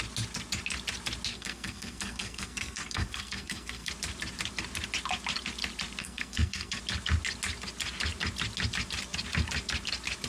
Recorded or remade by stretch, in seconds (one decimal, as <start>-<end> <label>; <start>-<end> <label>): 0.0-1.3 recorded; 1.3-3.9 remade; 3.9-6.0 recorded; 6.0-6.8 remade; 6.8-10.3 recorded